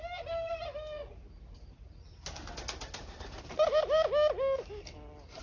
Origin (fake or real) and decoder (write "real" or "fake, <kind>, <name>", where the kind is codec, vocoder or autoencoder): real